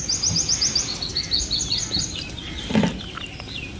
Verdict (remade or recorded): recorded